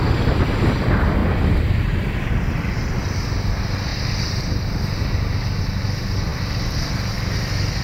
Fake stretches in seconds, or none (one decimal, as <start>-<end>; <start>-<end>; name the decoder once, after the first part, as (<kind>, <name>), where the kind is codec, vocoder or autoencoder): none